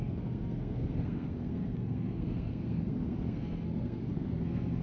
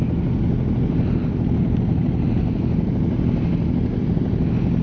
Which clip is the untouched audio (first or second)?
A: second